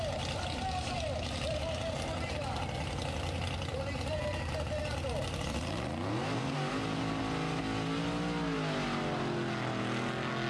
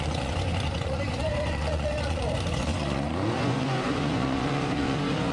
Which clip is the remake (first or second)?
second